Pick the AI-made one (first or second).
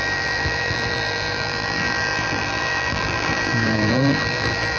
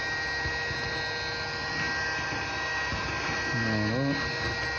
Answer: first